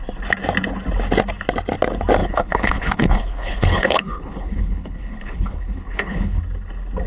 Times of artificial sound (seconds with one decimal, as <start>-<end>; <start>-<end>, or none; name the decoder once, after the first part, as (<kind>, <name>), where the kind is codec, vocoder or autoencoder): 2.2-6.4 (codec, HILCodec)